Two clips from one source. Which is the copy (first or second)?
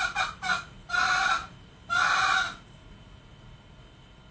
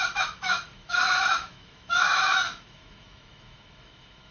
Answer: second